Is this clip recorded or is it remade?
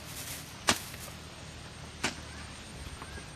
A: recorded